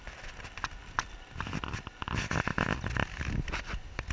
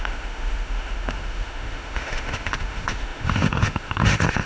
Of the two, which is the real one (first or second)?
first